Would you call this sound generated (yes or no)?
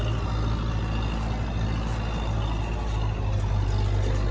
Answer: no